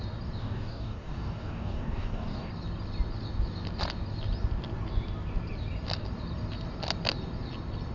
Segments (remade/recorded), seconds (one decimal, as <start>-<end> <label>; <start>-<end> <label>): 0.0-0.4 recorded; 0.4-2.5 remade; 2.5-7.9 recorded

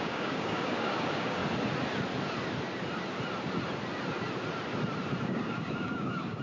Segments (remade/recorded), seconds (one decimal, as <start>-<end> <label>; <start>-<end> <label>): 0.0-1.4 remade; 1.4-5.2 recorded; 5.2-6.4 remade

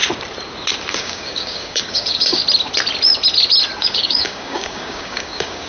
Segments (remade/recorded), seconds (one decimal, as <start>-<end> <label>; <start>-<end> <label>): 0.0-1.0 recorded; 1.0-2.4 remade; 2.4-3.8 recorded; 3.8-5.7 remade

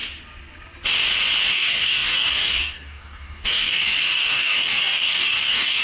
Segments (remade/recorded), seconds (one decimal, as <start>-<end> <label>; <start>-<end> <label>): 0.0-1.5 recorded; 1.5-5.8 remade